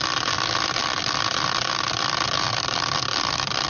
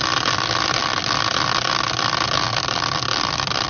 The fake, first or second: first